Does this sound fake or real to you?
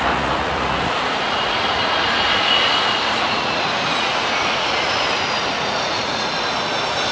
fake